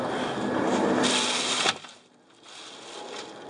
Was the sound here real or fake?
real